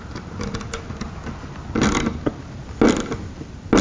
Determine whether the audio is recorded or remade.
recorded